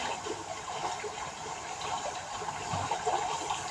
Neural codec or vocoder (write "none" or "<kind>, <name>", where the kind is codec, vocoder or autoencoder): vocoder, BigVGAN v2